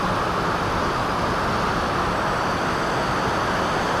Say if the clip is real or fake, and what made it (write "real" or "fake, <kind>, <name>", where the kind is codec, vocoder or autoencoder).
real